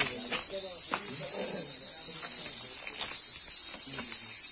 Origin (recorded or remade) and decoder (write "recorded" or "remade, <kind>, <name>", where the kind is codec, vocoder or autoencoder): recorded